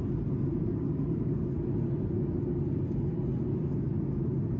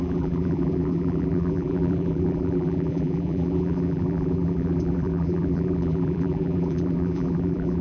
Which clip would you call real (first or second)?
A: first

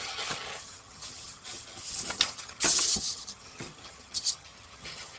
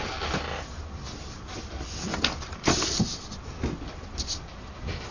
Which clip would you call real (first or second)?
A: second